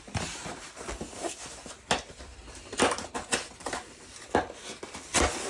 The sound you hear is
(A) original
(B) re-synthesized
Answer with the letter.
A